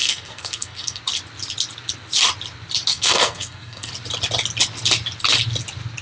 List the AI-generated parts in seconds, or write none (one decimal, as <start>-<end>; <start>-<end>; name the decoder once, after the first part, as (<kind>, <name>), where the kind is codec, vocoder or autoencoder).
0.0-1.0 (codec, SNAC); 2.9-3.9